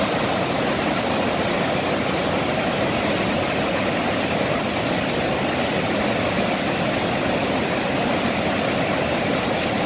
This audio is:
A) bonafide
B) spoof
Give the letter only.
A